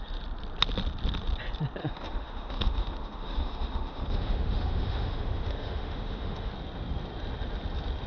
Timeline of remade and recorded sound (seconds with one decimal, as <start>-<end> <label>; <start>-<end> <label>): 0.0-1.8 recorded; 1.8-6.5 remade; 6.5-8.1 recorded